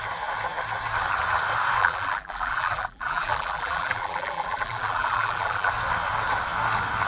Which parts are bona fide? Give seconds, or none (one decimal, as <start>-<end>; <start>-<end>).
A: 0.0-1.8; 5.7-7.1